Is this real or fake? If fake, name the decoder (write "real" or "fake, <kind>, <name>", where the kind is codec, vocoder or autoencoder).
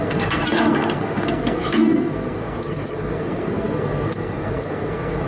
fake, codec, SNAC